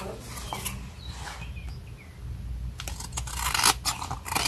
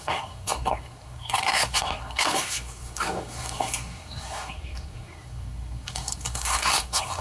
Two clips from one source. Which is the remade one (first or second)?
second